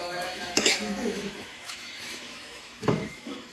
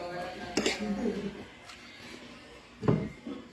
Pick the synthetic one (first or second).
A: first